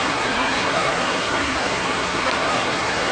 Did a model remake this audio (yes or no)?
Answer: yes